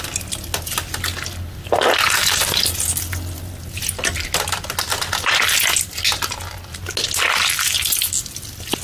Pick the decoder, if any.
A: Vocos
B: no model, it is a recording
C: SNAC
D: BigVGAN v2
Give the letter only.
B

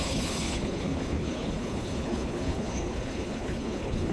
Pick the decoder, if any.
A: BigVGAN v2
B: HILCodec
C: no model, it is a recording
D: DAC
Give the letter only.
B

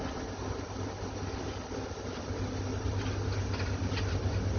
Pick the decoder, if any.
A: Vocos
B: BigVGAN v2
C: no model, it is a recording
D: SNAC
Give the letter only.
C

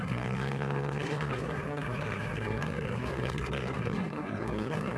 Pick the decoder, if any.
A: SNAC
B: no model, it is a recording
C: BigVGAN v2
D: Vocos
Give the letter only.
A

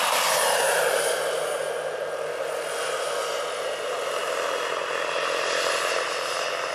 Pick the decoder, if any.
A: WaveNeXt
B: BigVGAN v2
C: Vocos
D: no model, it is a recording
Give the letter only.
D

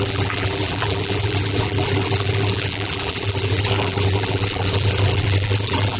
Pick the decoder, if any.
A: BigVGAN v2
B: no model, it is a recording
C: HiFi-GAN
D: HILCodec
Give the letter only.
A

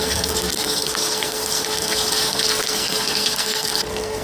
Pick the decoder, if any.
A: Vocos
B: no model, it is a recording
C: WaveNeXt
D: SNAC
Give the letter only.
D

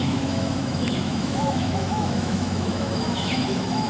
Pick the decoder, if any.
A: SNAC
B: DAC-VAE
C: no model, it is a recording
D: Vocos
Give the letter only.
B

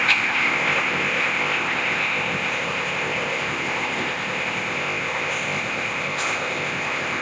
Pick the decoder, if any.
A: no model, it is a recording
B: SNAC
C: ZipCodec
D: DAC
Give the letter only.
C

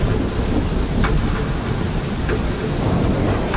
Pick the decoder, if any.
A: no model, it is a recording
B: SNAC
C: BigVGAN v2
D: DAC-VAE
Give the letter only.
A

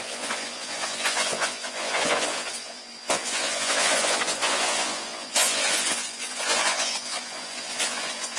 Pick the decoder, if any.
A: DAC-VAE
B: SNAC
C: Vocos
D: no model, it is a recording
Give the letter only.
C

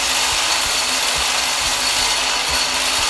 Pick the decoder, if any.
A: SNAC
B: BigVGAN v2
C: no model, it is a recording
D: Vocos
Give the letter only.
C